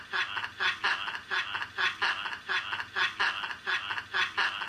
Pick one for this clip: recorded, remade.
recorded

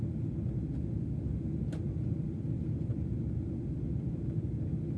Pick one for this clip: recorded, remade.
recorded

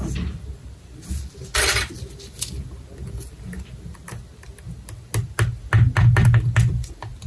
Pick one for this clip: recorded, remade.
recorded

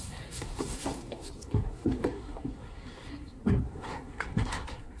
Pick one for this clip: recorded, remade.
remade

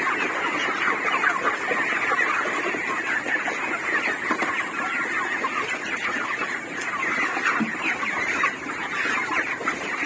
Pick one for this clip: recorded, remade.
recorded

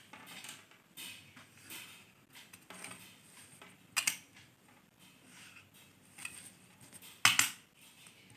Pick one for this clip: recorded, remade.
recorded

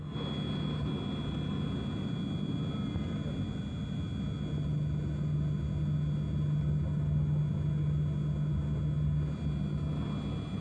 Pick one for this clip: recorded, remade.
recorded